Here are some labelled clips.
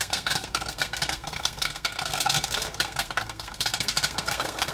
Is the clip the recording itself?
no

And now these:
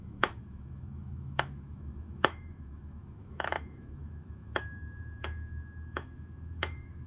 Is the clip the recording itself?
no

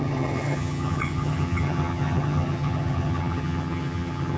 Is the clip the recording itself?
no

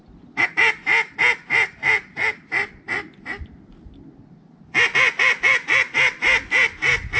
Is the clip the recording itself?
yes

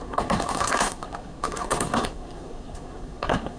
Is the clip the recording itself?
no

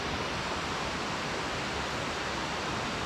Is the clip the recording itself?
yes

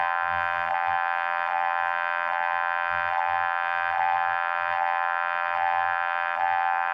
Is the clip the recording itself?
no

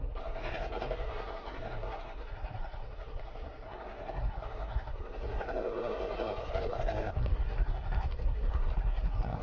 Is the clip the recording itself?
no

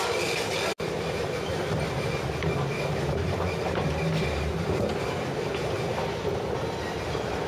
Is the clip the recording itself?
yes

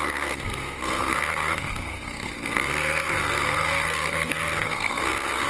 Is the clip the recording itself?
no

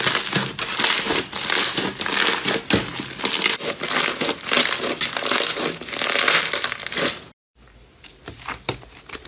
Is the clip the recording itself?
yes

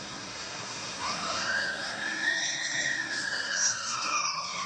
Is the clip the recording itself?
no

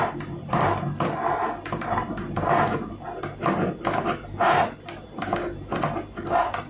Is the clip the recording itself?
yes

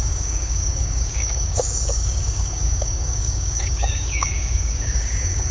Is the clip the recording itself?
no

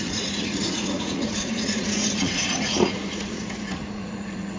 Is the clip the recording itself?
no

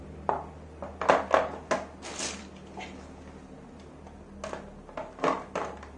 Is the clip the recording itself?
yes